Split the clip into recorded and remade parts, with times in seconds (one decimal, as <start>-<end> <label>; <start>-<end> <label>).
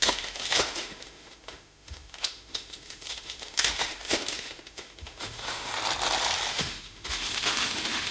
0.0-5.7 remade; 5.7-6.5 recorded; 6.5-8.1 remade